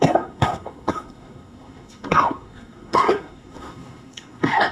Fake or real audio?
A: fake